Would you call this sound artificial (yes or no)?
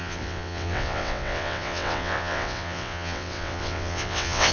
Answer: yes